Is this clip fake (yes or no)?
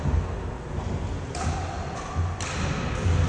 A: no